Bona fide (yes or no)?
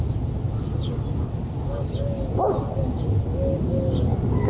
yes